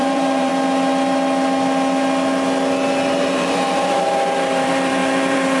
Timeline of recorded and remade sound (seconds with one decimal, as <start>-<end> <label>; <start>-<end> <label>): 0.0-0.5 remade; 0.5-3.2 recorded; 3.2-5.6 remade